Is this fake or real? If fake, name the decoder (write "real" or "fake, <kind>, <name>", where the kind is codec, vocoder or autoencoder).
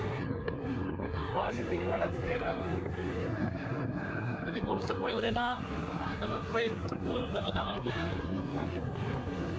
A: fake, codec, SNAC